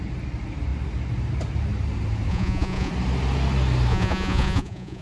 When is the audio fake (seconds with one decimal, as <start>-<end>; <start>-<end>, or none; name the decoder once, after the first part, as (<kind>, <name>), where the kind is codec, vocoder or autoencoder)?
2.3-2.9 (vocoder, Vocos); 3.9-5.0